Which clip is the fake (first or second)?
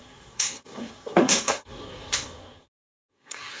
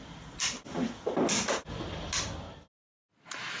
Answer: first